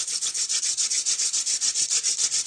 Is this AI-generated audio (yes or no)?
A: no